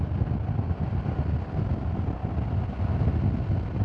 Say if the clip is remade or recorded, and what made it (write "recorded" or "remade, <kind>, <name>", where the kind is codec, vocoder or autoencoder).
recorded